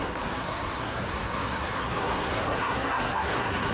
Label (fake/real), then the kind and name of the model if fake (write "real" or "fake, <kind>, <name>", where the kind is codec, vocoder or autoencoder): fake, codec, SNAC